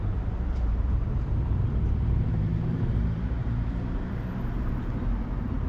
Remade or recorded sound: remade